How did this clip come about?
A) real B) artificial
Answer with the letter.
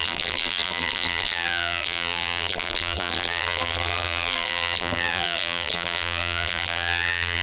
B